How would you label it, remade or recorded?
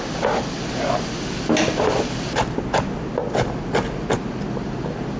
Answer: recorded